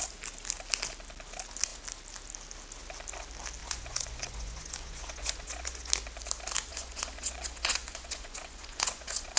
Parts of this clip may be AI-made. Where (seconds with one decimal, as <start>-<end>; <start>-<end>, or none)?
3.6-5.9; 6.7-9.4